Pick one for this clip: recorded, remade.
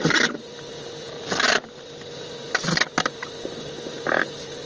recorded